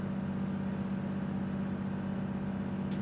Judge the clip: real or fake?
real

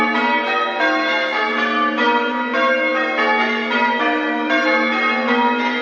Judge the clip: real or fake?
real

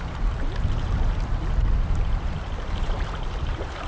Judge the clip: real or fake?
real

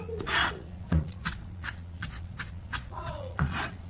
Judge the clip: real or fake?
fake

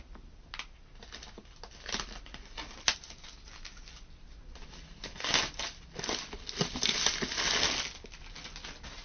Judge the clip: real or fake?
real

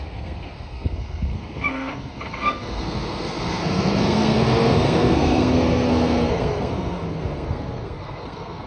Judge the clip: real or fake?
fake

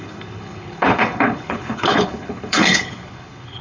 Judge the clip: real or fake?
fake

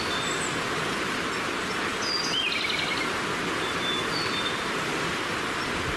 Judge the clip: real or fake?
real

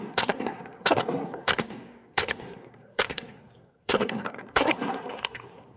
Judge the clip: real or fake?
fake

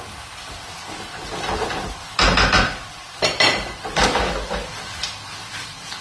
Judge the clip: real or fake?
real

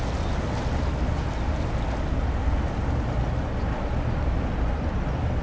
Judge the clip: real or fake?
real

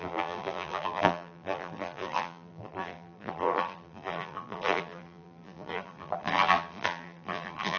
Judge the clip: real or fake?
fake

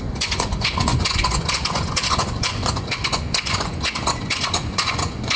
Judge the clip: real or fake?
fake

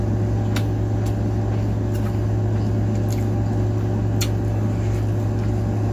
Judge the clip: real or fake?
real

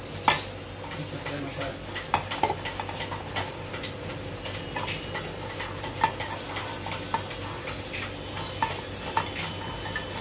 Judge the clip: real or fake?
real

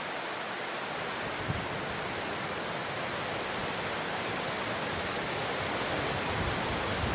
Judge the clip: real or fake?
real